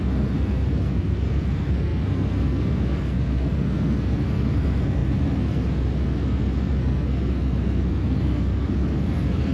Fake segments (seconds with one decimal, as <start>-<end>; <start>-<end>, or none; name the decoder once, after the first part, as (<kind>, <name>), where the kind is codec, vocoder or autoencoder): 0.0-9.5 (codec, SNAC)